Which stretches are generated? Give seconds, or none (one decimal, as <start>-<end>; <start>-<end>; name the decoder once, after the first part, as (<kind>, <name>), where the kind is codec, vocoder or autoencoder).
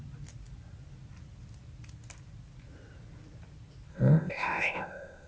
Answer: 3.9-5.3 (codec, ZipCodec)